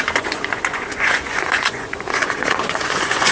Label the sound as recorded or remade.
remade